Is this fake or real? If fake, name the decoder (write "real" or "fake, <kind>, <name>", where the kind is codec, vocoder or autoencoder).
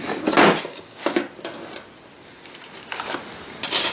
real